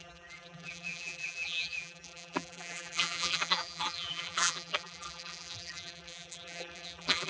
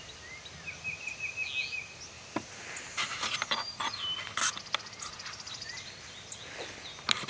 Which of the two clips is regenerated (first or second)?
first